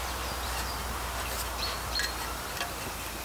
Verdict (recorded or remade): remade